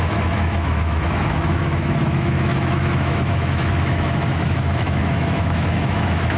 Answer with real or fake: fake